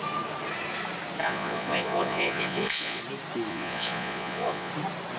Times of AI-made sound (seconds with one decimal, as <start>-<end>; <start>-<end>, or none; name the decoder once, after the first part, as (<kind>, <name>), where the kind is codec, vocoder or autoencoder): 1.2-3.0 (vocoder, Vocos); 3.5-4.7